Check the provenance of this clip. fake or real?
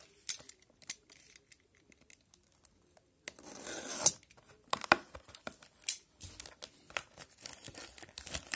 real